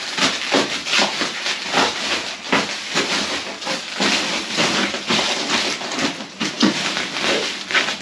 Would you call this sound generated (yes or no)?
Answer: no